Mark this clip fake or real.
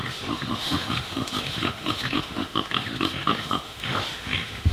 fake